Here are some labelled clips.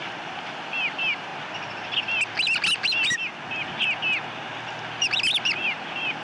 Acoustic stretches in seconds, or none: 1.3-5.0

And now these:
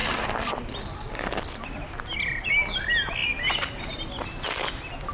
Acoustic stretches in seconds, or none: 1.4-5.1

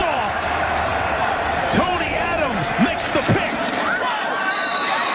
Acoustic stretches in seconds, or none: 0.0-0.5

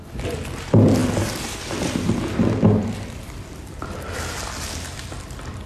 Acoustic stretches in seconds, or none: 0.0-1.0; 3.8-5.7

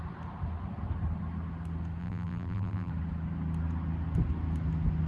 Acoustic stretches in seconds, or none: 0.0-2.0; 2.9-5.1

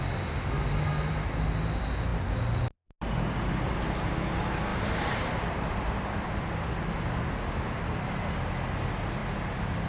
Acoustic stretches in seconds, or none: 0.0-4.7; 6.4-9.9

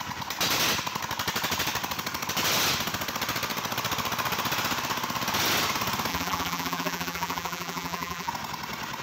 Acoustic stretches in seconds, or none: 0.0-6.1; 8.3-9.0